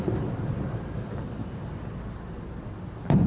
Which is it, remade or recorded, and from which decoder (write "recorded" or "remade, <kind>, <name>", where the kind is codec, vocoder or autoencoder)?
recorded